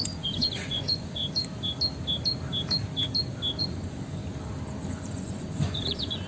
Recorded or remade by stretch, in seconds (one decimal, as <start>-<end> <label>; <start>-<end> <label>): 0.0-1.2 remade; 1.2-3.6 recorded; 3.6-4.2 remade; 4.2-4.9 recorded; 4.9-6.3 remade